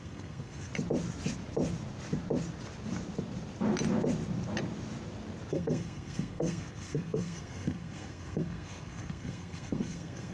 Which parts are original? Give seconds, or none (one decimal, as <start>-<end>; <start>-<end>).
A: 0.7-5.5